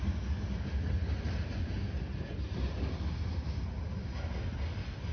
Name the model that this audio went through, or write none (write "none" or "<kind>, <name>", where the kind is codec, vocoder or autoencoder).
none